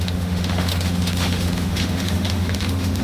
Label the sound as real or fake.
fake